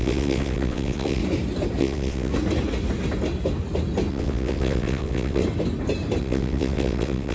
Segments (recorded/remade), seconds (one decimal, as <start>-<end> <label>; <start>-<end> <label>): 0.0-1.2 remade; 1.2-1.8 recorded; 1.8-2.3 remade; 2.3-4.1 recorded; 4.1-5.4 remade; 5.4-6.2 recorded; 6.2-7.3 remade